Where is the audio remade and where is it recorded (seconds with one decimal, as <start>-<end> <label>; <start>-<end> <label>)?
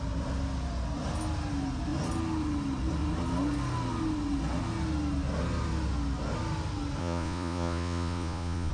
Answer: 0.0-7.0 recorded; 7.0-8.7 remade